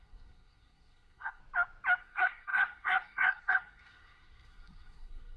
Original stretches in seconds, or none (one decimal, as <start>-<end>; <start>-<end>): 1.4-2.0